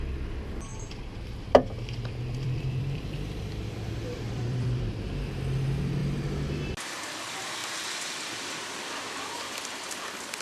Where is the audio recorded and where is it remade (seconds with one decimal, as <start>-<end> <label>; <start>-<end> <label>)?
0.0-0.7 recorded; 0.7-4.9 remade; 4.9-7.6 recorded; 7.6-9.3 remade; 9.3-10.4 recorded